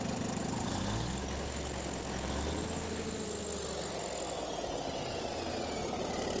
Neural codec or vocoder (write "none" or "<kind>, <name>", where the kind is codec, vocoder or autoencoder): none